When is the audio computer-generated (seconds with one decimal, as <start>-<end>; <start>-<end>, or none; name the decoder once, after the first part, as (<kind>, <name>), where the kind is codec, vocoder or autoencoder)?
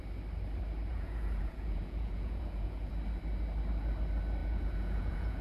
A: 0.9-2.9 (vocoder, Vocos); 4.4-5.4